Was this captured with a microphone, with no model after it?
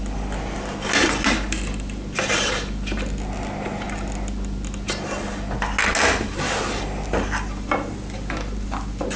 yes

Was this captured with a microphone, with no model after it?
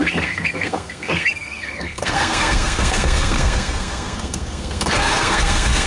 no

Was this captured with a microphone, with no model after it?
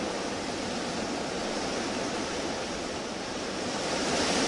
yes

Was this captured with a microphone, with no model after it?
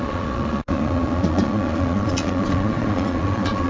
no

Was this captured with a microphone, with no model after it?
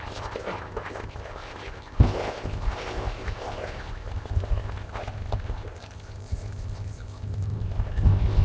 no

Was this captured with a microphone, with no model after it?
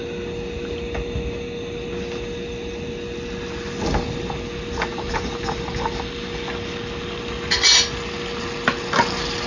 yes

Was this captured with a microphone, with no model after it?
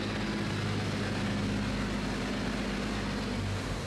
yes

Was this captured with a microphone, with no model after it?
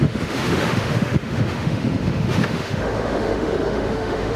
no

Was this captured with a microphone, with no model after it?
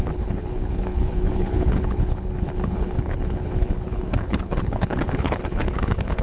no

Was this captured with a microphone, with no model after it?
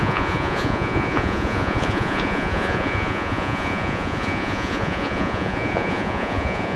no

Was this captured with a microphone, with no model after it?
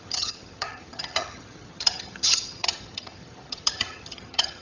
no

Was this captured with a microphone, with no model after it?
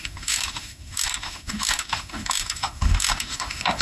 no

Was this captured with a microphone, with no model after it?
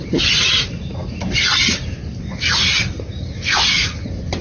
yes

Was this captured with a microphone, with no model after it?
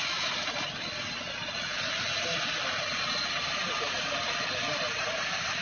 yes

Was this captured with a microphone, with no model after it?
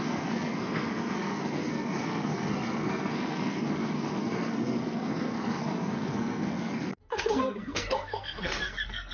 no